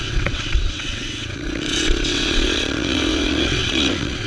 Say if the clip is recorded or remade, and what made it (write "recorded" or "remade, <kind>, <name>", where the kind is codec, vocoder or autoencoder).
remade, vocoder, WaveNeXt